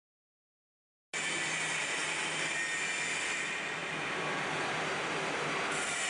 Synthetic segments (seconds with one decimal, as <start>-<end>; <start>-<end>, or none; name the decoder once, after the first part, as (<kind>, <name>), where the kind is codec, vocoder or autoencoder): none